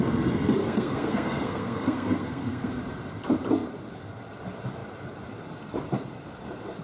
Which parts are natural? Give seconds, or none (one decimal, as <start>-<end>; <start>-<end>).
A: 0.0-0.6; 2.7-6.8